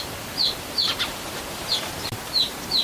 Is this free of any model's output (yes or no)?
no